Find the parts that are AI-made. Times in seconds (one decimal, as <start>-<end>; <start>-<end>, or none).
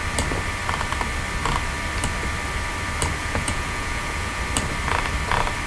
3.2-4.4